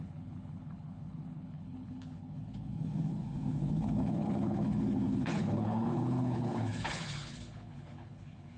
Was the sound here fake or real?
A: fake